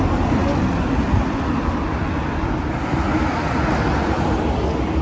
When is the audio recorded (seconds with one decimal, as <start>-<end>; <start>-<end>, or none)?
0.0-5.0